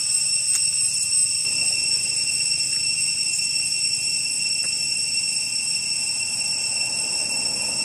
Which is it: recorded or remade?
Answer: recorded